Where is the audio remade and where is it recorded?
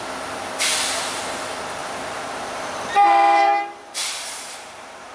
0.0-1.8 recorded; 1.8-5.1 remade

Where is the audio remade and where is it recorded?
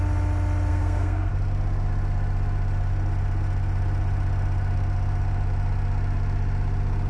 0.0-0.7 recorded; 0.7-1.3 remade; 1.3-7.1 recorded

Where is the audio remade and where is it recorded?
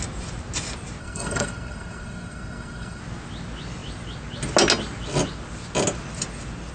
0.0-1.0 recorded; 1.0-3.0 remade; 3.0-6.7 recorded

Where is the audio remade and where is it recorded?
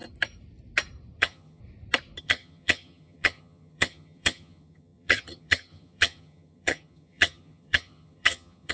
0.0-1.2 recorded; 1.2-1.6 remade; 1.6-2.2 recorded; 2.2-8.7 remade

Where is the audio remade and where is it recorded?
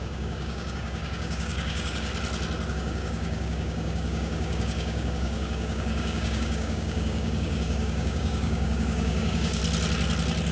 0.0-2.1 remade; 2.1-2.7 recorded; 2.7-9.6 remade; 9.6-10.5 recorded